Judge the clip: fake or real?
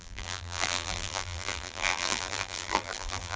fake